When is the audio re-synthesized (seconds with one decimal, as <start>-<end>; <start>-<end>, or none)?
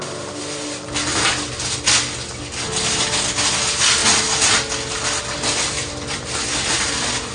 none